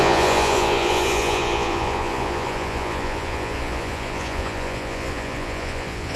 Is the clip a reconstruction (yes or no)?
yes